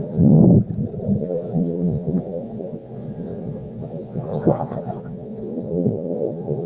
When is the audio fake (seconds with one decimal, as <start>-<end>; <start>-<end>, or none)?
0.0-0.4; 1.2-6.7